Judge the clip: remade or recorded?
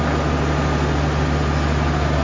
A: recorded